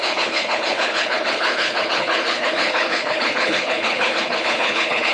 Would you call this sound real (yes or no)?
no